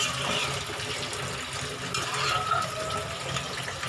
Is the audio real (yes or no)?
yes